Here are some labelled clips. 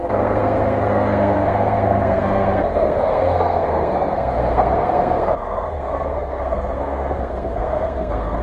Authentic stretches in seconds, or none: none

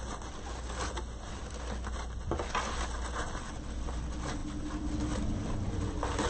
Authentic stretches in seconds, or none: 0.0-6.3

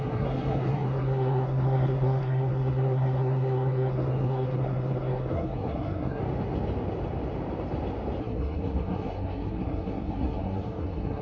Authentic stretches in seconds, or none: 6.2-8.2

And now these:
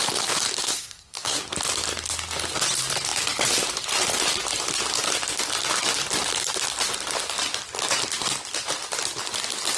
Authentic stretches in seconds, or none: 0.0-0.6; 1.4-9.8

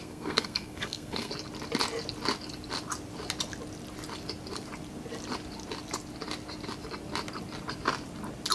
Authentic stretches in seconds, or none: 1.3-8.5

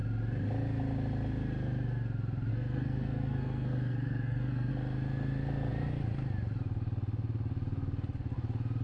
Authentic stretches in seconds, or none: 0.0-2.5; 4.7-8.8

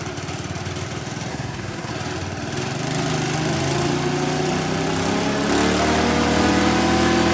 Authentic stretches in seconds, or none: 0.0-1.3; 1.9-7.3